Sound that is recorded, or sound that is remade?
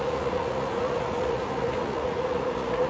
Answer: remade